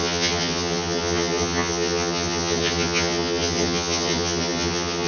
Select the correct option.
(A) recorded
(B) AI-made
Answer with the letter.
B